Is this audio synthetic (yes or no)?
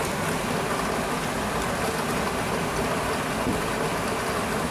no